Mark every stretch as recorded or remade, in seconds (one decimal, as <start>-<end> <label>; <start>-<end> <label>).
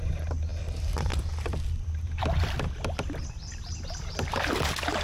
0.0-0.5 recorded; 0.5-3.2 remade; 3.2-5.0 recorded